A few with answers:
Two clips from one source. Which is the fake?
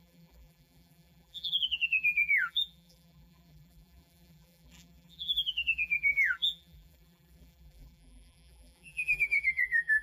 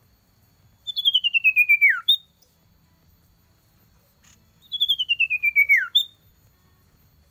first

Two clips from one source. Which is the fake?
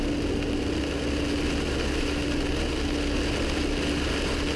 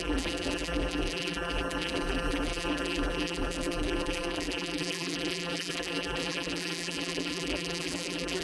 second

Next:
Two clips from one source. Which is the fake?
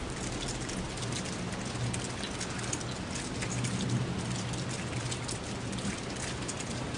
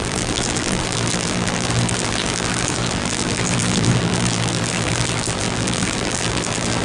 second